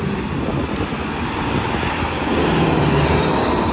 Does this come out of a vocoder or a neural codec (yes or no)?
no